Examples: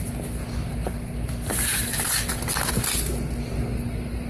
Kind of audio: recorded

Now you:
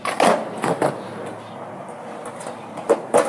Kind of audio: recorded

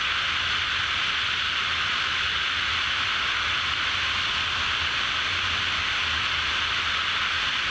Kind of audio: recorded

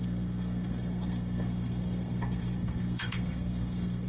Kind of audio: remade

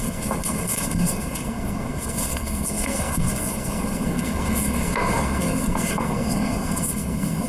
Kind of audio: remade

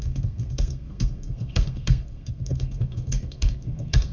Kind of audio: remade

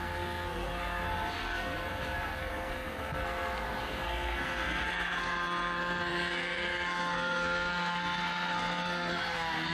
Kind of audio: remade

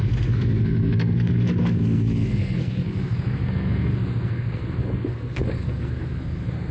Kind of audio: remade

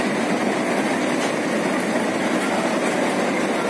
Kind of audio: recorded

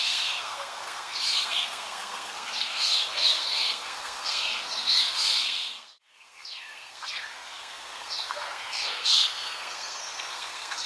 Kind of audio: remade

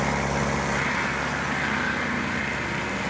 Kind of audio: recorded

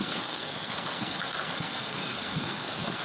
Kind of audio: remade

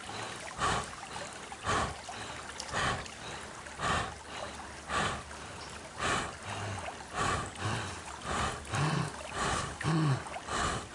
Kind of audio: recorded